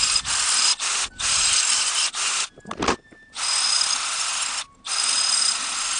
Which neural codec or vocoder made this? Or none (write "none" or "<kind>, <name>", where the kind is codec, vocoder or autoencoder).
none